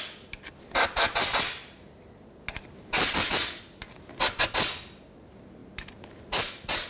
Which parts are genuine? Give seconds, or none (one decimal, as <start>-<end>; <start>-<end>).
0.0-5.6